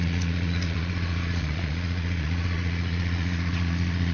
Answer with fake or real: fake